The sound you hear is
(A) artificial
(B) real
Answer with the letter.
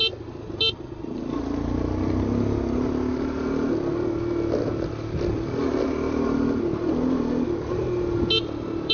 B